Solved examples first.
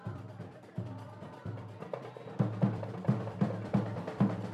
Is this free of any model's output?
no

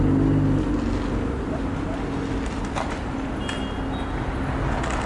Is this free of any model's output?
yes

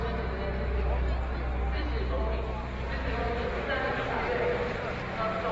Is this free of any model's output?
yes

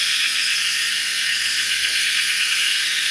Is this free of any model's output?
no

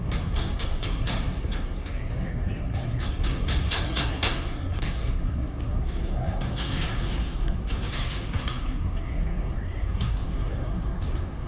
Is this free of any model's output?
no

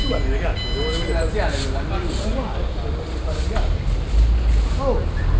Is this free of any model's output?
yes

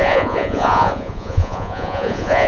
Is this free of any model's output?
no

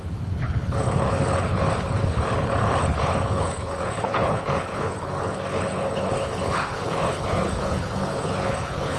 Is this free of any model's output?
no